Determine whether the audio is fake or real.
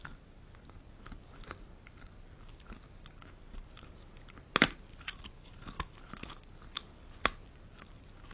real